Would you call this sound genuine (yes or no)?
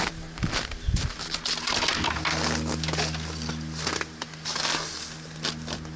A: yes